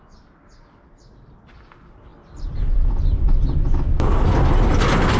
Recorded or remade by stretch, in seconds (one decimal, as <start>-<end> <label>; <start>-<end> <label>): 0.0-5.2 recorded